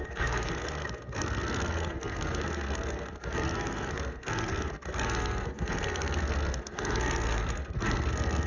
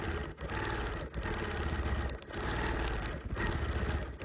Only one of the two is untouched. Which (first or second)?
second